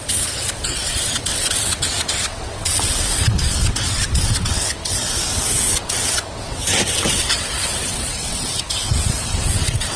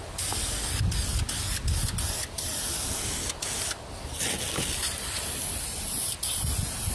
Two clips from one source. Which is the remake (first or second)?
first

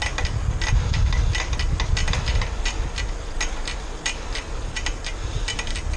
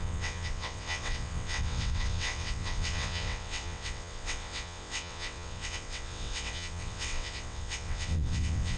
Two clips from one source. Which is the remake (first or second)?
second